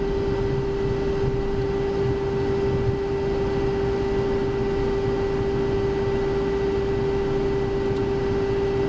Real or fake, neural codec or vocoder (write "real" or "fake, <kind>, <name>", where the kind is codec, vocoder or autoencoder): real